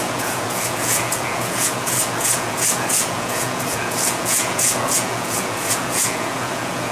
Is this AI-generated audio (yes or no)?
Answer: yes